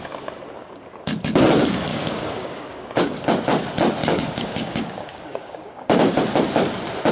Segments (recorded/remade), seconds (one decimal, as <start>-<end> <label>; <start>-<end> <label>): 0.0-1.9 recorded; 1.9-3.2 remade; 3.2-4.0 recorded; 4.0-6.2 remade; 6.2-7.1 recorded